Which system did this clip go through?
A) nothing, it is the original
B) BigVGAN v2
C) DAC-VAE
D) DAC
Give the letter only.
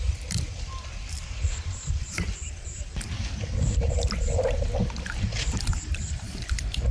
B